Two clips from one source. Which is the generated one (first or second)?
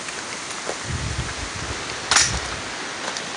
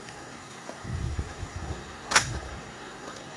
second